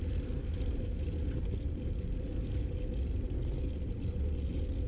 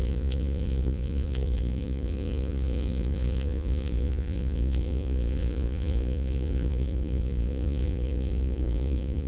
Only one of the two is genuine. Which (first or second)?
first